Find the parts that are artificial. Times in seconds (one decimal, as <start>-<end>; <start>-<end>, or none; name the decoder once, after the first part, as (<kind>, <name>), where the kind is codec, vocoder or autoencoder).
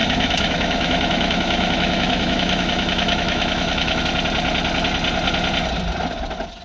0.0-4.0 (autoencoder, DAC-VAE)